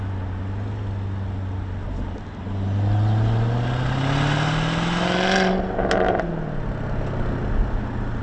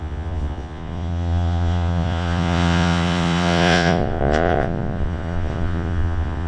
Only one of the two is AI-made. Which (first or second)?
second